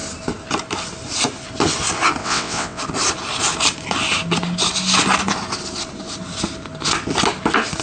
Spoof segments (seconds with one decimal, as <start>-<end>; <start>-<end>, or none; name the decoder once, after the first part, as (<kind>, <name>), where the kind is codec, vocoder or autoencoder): 2.2-2.8 (vocoder, WaveNeXt)